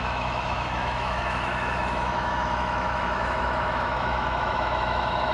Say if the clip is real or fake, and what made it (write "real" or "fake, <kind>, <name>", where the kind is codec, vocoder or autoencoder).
fake, autoencoder, DAC-VAE